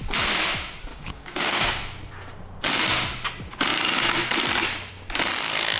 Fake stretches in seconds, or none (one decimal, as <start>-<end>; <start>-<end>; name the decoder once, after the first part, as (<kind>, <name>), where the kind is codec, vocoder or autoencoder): 0.9-1.7 (codec, DAC)